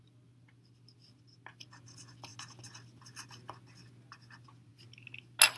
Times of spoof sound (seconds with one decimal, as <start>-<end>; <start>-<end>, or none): none